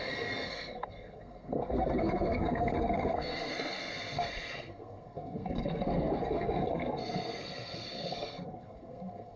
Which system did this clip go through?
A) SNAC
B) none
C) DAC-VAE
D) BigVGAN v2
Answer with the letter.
A